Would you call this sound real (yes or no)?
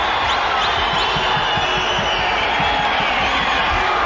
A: yes